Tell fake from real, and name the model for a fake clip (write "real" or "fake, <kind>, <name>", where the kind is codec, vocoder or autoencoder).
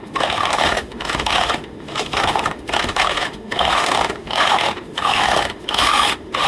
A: fake, autoencoder, DAC-VAE